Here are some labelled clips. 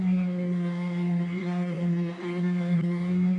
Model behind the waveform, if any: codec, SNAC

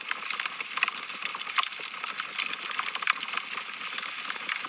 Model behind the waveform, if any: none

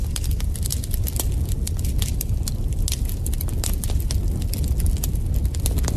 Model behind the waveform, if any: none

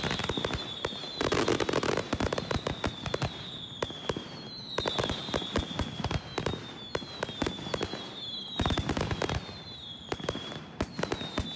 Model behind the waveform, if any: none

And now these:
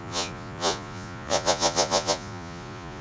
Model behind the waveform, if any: vocoder, Vocos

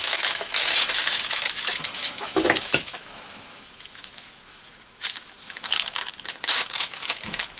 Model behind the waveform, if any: autoencoder, DAC-VAE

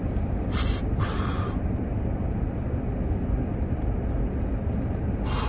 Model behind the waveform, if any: none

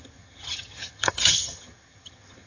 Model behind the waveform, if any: vocoder, HiFi-GAN